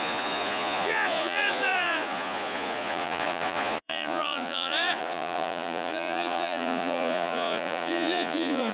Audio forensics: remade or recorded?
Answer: remade